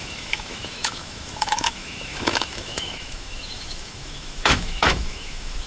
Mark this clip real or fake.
fake